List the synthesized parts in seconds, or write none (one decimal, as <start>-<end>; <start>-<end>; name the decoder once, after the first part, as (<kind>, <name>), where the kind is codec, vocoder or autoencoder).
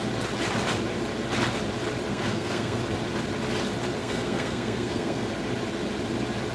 2.1-2.8 (codec, SNAC); 4.0-5.3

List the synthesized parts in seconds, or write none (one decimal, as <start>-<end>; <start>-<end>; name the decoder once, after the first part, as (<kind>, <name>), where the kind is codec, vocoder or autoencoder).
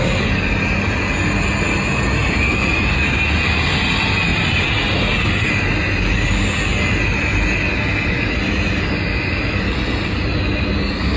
none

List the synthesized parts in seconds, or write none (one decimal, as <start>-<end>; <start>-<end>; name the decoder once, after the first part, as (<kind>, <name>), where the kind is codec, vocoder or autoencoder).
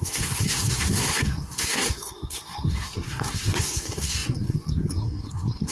0.0-5.7 (codec, SNAC)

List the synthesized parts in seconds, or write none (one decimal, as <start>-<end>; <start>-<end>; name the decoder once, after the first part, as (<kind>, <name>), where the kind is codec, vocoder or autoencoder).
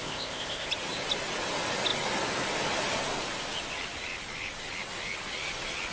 0.0-0.7 (codec, ZipCodec)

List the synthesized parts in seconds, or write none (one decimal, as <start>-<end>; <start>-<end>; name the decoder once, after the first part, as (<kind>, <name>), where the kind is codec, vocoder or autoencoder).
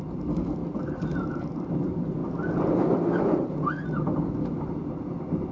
none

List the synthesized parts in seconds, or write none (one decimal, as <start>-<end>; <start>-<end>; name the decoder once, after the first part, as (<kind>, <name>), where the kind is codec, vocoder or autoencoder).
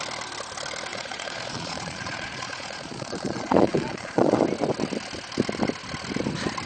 0.9-4.4 (vocoder, Vocos)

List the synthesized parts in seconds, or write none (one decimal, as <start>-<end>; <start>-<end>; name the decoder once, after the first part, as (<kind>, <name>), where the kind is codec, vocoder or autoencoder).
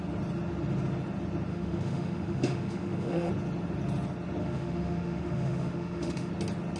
1.5-3.3 (autoencoder, DAC-VAE); 4.4-6.3